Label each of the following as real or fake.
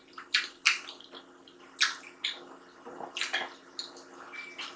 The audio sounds real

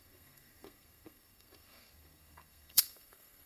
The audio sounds fake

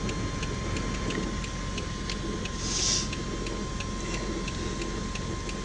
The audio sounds real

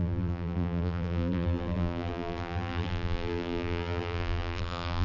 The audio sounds fake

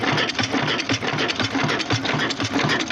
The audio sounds real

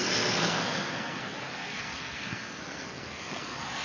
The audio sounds fake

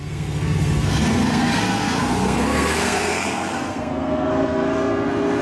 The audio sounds fake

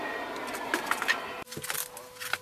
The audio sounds real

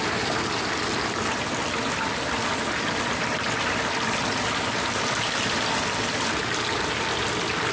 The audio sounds real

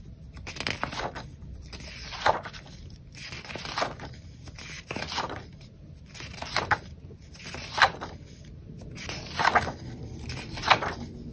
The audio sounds real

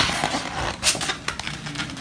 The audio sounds real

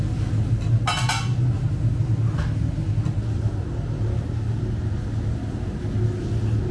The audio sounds real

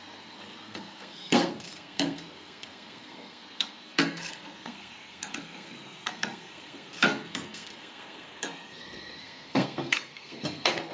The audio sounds fake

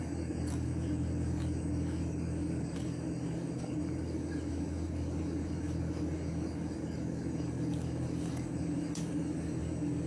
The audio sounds fake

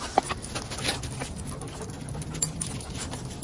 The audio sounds real